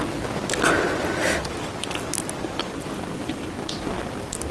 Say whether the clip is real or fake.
real